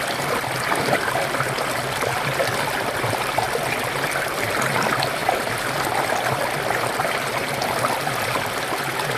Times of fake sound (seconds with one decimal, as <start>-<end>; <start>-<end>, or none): none